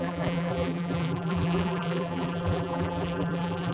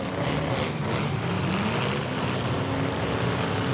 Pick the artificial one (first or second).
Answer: first